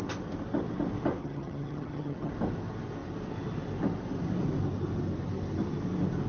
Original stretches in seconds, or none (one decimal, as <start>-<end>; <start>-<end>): 0.0-1.2; 2.3-6.3